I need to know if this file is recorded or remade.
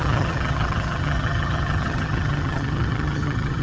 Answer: remade